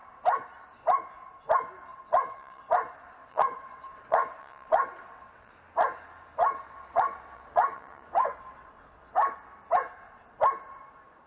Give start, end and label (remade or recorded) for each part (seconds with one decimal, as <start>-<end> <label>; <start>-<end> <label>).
0.0-1.9 recorded; 1.9-2.6 remade; 2.6-3.2 recorded; 3.2-5.5 remade; 5.5-6.4 recorded; 6.4-9.1 remade; 9.1-11.3 recorded